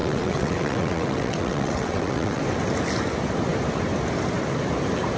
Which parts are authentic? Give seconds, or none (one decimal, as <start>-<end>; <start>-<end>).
2.4-5.2